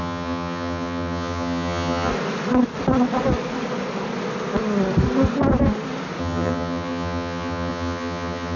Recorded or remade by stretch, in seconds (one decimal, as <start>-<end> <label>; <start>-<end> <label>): 0.0-2.1 remade; 2.1-6.2 recorded; 6.2-8.6 remade